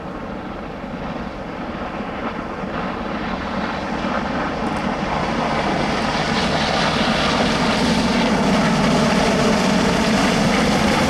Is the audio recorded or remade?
recorded